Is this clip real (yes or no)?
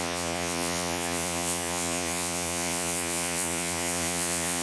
no